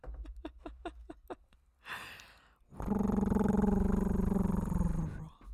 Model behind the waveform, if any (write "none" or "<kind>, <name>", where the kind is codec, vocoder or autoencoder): none